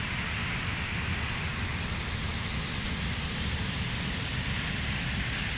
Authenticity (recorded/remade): recorded